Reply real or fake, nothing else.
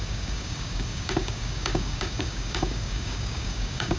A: fake